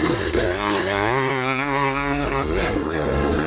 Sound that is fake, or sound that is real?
fake